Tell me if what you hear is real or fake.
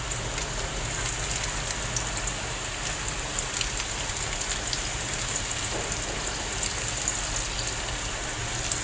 real